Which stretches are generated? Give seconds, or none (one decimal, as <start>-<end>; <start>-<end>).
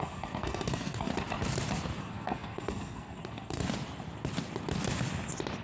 0.0-1.1; 2.0-3.6